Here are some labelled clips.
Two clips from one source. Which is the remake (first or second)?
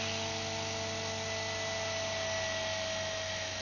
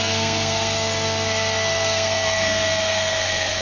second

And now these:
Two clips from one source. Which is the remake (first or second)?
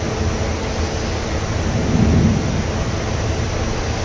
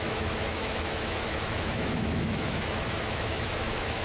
second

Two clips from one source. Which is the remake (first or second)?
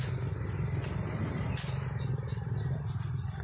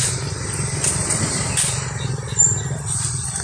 second